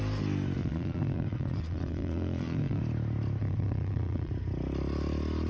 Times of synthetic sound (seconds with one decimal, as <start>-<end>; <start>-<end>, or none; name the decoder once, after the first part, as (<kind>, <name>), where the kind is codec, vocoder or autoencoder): 0.6-2.8 (vocoder, Vocos); 3.4-4.3